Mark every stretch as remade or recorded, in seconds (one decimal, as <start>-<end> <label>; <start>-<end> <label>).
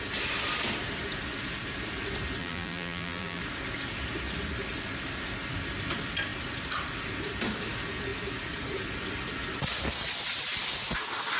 0.0-2.4 recorded; 2.4-3.4 remade; 3.4-11.4 recorded